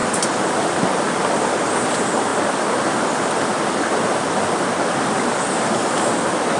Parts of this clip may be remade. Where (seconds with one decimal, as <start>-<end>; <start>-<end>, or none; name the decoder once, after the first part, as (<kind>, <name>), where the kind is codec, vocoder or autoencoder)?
none